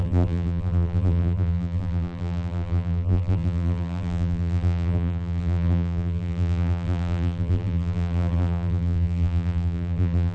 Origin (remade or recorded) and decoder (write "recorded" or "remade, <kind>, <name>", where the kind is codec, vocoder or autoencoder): remade, vocoder, BigVGAN v2